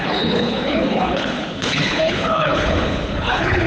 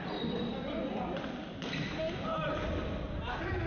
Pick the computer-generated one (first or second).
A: first